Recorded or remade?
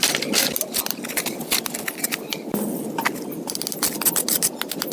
recorded